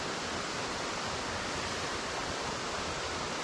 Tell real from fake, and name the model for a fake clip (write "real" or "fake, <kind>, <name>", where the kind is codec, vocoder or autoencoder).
real